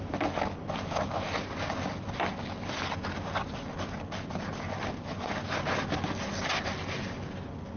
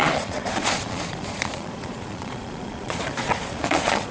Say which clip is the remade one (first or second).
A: second